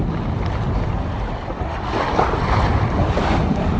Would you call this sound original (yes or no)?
yes